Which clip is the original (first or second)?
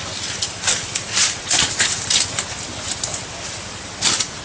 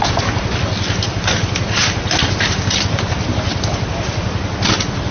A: second